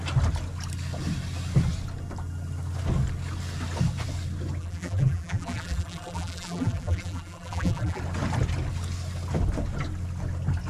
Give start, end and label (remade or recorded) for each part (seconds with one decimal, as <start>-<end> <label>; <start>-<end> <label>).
0.0-4.6 recorded; 4.6-8.0 remade; 8.0-10.7 recorded